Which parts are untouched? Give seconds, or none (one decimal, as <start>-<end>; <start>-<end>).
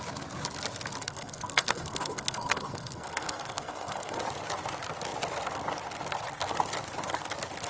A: 0.0-1.0; 4.2-7.7